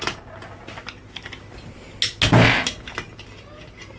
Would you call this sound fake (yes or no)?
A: no